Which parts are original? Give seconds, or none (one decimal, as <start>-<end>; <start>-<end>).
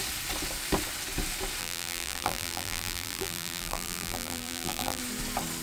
0.0-1.6; 5.0-5.6